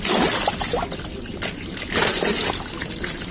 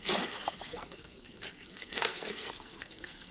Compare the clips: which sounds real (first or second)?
first